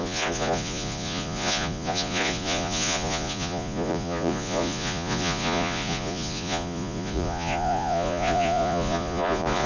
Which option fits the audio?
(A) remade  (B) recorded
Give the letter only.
A